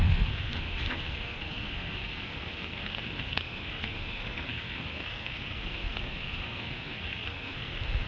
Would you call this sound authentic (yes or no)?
no